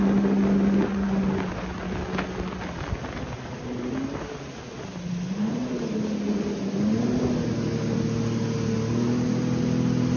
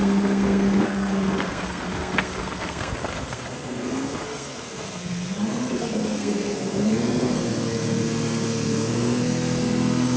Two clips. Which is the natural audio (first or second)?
first